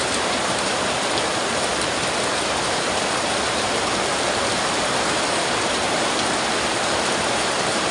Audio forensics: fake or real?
fake